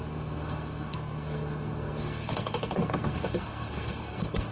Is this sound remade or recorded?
remade